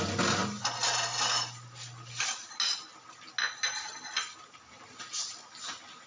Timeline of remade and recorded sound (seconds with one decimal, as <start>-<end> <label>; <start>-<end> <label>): 0.0-6.1 recorded